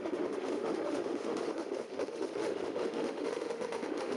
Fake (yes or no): yes